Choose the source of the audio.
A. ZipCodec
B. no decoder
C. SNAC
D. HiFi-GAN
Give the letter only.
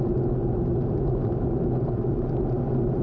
B